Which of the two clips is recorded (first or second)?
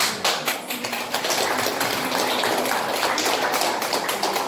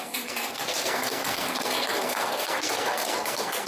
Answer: first